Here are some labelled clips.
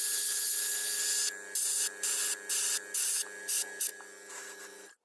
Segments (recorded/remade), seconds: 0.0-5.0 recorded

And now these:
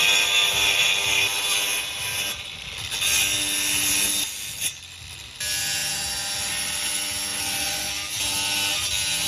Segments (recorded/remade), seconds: 0.0-7.3 recorded; 7.3-7.9 remade; 7.9-9.3 recorded

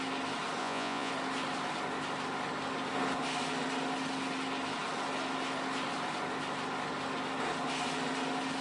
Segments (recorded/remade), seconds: 0.0-0.6 recorded; 0.6-1.1 remade; 1.1-8.6 recorded

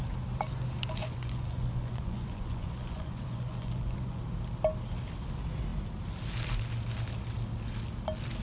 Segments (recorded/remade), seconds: 0.0-1.0 recorded; 1.0-4.2 remade; 4.2-8.4 recorded

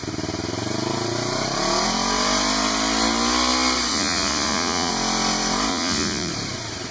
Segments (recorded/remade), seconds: 0.0-3.9 recorded; 3.9-4.9 remade; 4.9-5.7 recorded; 5.7-6.3 remade; 6.3-6.9 recorded

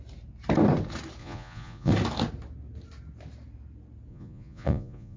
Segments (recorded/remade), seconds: 0.0-1.2 recorded; 1.2-1.9 remade; 1.9-4.1 recorded; 4.1-5.2 remade